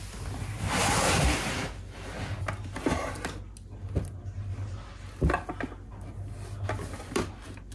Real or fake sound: real